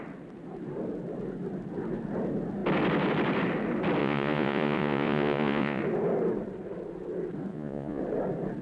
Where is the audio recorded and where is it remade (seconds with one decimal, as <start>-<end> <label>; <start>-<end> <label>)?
0.0-4.0 recorded; 4.0-5.8 remade; 5.8-7.5 recorded; 7.5-8.0 remade; 8.0-8.6 recorded